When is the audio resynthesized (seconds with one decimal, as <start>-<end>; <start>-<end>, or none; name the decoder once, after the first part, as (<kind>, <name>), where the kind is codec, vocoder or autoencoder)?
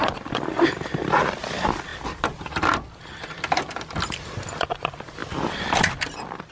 none